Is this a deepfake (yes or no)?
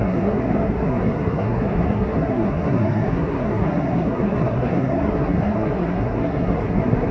yes